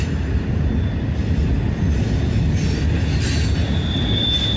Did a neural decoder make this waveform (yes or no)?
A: no